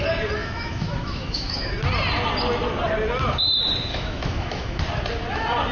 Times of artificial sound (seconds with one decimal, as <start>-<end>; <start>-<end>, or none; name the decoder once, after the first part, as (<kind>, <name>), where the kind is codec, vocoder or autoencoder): 0.4-1.7 (autoencoder, DAC-VAE); 3.9-4.8